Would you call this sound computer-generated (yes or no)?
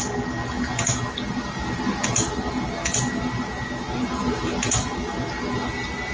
no